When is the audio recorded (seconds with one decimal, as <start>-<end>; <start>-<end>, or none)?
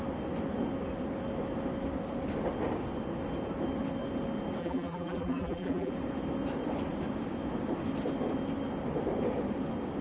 0.0-4.6; 5.9-10.0